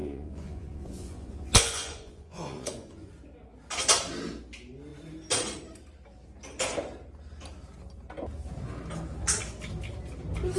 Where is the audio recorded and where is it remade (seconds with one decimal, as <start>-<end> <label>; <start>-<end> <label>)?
0.0-3.1 remade; 3.1-10.6 recorded